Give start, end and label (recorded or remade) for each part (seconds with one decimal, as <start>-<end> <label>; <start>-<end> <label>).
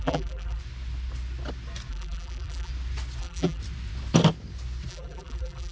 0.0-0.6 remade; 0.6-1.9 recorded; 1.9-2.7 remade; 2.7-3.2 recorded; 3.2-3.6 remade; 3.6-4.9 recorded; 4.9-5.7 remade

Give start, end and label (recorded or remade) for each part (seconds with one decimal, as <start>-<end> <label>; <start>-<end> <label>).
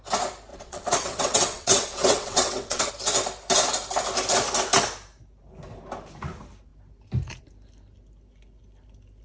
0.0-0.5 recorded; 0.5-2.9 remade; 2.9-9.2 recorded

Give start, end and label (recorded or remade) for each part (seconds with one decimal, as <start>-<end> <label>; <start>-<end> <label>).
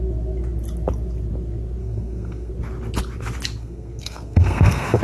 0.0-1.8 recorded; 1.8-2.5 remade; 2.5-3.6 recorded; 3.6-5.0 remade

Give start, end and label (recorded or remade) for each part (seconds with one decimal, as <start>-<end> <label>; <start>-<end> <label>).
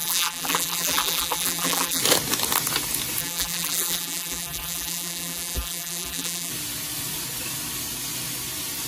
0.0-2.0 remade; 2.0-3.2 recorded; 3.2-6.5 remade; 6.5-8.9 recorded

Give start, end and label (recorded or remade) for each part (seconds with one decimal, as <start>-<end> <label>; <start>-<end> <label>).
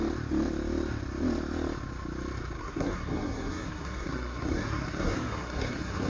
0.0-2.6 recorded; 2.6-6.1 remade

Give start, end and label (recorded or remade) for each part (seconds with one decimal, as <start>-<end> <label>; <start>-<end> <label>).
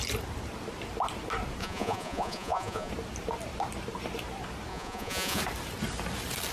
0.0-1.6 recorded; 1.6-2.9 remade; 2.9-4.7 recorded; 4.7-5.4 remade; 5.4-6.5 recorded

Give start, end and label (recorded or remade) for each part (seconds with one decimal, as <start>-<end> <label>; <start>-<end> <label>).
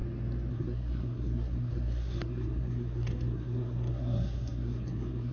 0.0-0.5 recorded; 0.5-5.3 remade